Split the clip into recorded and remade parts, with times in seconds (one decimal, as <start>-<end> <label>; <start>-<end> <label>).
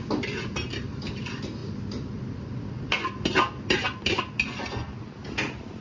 0.0-5.8 recorded